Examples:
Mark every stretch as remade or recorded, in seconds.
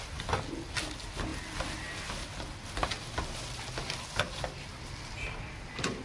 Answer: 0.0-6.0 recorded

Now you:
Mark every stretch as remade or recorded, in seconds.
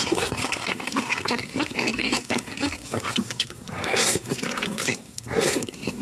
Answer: 0.0-6.0 remade